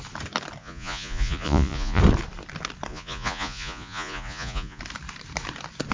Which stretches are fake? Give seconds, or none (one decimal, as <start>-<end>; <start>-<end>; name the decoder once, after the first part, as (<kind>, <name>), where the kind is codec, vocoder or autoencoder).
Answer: 0.6-2.0 (vocoder, Vocos); 2.9-4.8